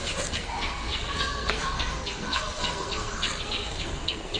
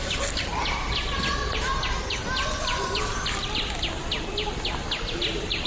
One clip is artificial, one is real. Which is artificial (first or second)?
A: first